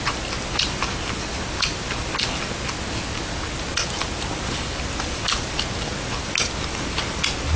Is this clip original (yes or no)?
yes